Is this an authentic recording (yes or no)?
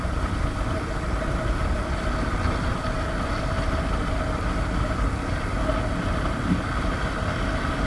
yes